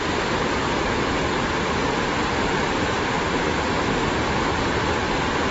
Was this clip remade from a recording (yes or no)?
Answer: no